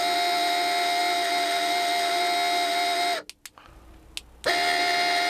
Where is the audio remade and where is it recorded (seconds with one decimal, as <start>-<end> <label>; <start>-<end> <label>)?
0.0-5.3 recorded